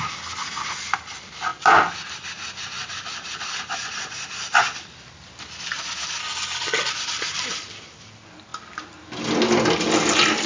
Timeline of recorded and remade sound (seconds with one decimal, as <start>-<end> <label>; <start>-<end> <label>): 0.0-6.2 recorded; 6.2-6.9 remade; 6.9-10.5 recorded